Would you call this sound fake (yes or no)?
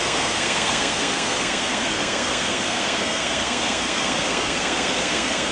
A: yes